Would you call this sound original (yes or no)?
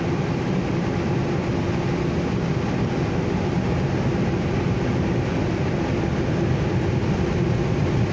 yes